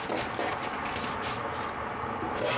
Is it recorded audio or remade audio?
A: recorded